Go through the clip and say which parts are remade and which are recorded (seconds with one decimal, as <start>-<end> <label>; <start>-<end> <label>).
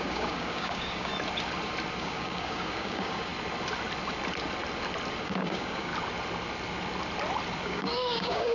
0.0-1.1 remade; 1.1-2.0 recorded; 2.0-3.3 remade; 3.3-5.2 recorded; 5.2-5.9 remade; 5.9-7.6 recorded; 7.6-8.5 remade